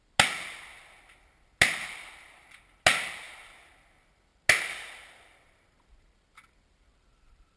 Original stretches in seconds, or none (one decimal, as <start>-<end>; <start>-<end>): 0.0-7.6